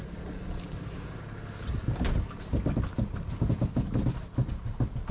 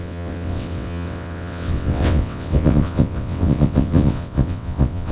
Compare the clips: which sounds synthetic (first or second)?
second